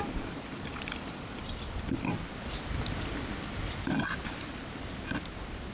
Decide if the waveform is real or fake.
real